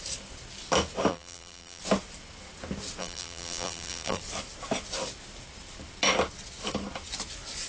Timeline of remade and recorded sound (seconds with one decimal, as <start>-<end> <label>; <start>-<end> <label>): 0.0-1.1 recorded; 1.1-1.8 remade; 1.8-3.0 recorded; 3.0-4.2 remade; 4.2-7.7 recorded